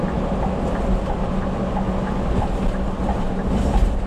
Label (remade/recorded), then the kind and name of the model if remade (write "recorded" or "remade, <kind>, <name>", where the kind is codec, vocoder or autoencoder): recorded